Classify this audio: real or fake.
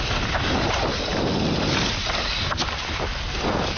real